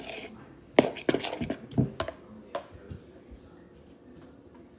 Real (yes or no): yes